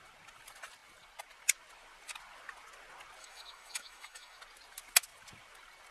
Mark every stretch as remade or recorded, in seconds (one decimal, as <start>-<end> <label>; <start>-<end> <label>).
0.0-3.2 recorded; 3.2-4.4 remade; 4.4-5.9 recorded